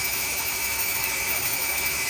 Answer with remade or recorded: remade